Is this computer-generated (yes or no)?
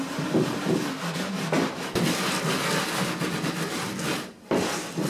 no